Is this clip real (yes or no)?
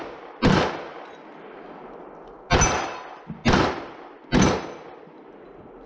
yes